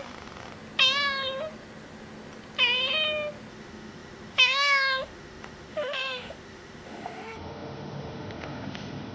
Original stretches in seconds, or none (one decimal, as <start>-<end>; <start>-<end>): 0.5-3.5